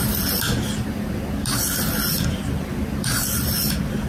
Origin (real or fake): real